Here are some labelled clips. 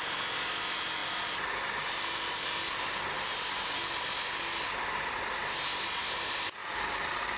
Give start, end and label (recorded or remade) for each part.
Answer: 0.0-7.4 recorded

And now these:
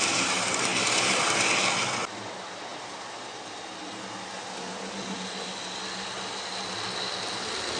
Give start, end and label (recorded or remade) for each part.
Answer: 0.0-7.8 recorded

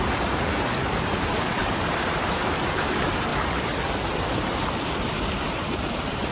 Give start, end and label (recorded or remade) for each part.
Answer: 0.0-6.3 remade

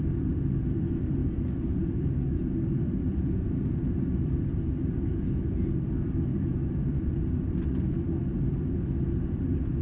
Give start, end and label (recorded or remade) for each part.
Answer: 0.0-1.2 remade; 1.2-2.0 recorded; 2.0-9.8 remade